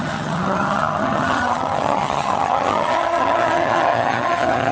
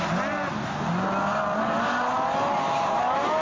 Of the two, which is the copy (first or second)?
first